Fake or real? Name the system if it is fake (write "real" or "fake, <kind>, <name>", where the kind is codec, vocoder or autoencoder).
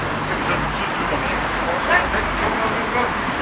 real